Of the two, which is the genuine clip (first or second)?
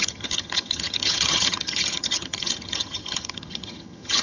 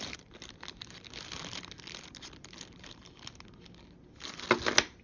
second